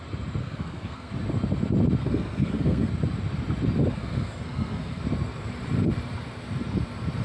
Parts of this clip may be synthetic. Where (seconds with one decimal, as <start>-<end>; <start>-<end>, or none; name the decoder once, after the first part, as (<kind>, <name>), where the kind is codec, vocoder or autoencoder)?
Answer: 0.4-1.1 (codec, SNAC); 2.0-2.9; 3.9-5.0